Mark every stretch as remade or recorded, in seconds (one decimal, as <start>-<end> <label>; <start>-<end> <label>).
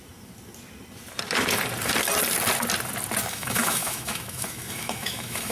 0.0-3.3 recorded; 3.3-5.5 remade